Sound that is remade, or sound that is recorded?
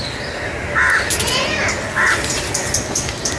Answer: recorded